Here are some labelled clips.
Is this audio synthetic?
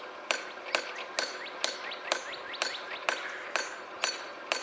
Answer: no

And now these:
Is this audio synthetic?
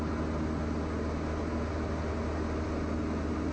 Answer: no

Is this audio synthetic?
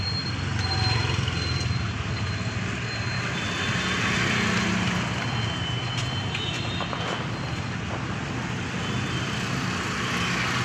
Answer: no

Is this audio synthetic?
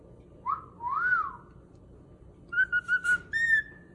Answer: no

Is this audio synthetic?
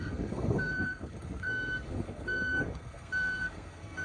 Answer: yes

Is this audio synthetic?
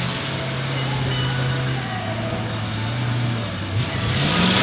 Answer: no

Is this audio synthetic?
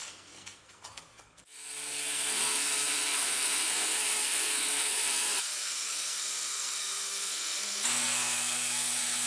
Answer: yes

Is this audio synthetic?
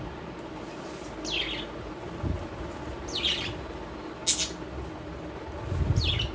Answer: no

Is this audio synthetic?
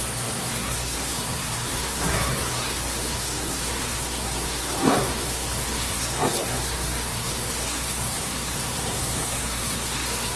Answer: yes